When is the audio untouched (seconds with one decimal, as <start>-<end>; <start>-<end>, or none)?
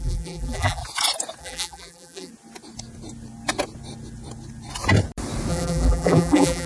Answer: 0.8-1.4; 2.3-5.5